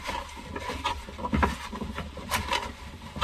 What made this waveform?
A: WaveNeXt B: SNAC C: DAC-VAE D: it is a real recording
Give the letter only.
D